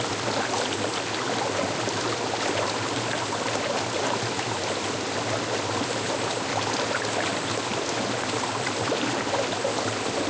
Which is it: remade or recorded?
recorded